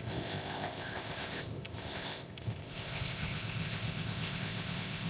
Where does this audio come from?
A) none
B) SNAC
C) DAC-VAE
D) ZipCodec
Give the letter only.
D